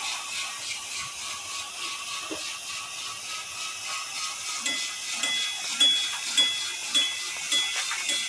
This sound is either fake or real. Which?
real